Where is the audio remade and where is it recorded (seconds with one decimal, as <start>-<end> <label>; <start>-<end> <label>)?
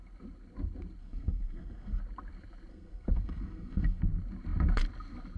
0.0-1.0 recorded; 1.0-2.0 remade; 2.0-2.7 recorded; 2.7-4.0 remade; 4.0-5.4 recorded